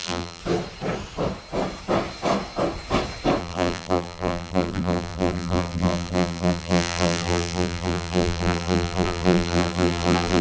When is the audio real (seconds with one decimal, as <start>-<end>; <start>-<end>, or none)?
0.4-3.4